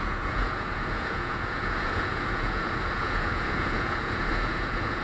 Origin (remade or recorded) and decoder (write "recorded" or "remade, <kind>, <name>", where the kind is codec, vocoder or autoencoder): remade, vocoder, Vocos